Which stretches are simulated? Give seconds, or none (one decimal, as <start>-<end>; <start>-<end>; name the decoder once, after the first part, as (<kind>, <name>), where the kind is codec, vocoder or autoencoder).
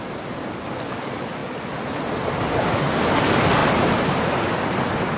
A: 0.0-0.5 (vocoder, BigVGAN v2); 3.6-4.5